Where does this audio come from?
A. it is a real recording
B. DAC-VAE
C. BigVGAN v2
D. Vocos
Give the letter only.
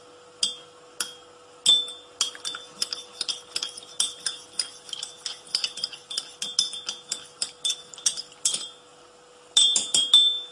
A